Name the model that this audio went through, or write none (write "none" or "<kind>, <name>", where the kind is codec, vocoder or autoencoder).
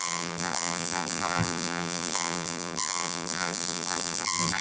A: vocoder, BigVGAN v2